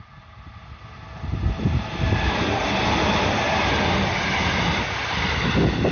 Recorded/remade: recorded